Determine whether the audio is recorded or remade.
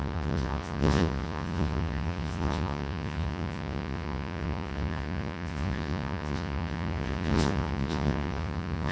remade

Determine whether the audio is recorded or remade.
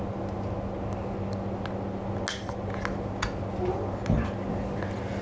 recorded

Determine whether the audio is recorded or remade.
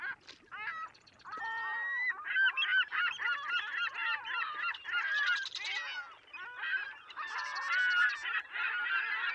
recorded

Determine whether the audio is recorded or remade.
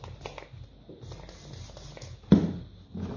recorded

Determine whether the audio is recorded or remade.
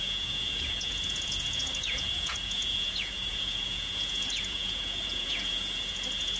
remade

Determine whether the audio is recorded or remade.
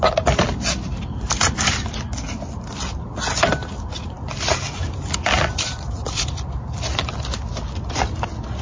recorded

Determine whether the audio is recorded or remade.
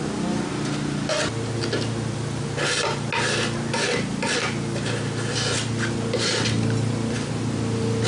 recorded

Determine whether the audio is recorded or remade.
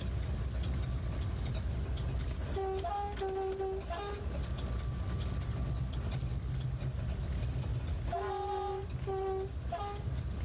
recorded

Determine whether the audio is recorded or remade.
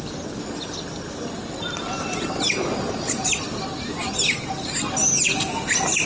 recorded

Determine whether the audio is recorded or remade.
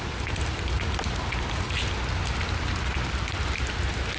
recorded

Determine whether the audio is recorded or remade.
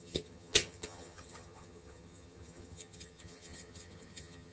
remade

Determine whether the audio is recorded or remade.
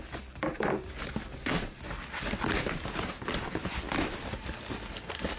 recorded